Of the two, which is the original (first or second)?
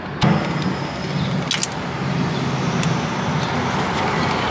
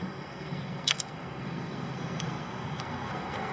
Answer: first